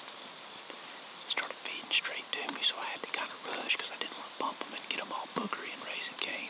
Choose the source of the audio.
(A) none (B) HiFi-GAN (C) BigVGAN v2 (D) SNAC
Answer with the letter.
A